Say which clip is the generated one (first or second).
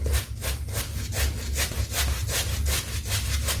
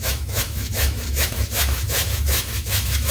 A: second